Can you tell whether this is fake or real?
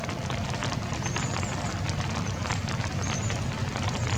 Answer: real